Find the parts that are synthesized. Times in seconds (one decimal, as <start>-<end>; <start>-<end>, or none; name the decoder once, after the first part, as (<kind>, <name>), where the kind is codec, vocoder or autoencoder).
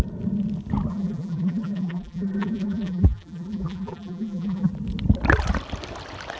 0.9-4.7 (vocoder, BigVGAN v2)